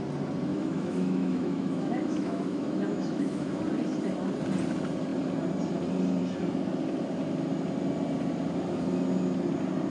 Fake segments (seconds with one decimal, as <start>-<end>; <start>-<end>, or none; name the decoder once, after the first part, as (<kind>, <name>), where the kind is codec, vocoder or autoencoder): 0.5-3.6 (autoencoder, DAC-VAE)